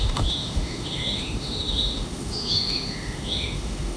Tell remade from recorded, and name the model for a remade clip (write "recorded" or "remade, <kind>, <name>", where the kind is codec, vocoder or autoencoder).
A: remade, autoencoder, DAC-VAE